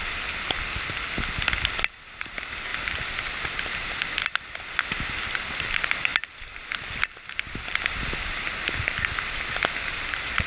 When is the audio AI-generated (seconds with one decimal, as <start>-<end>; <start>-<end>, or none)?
none